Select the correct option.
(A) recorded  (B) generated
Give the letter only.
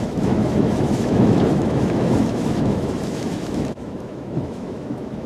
B